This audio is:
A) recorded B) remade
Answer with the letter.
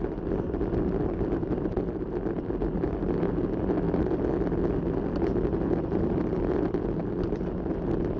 A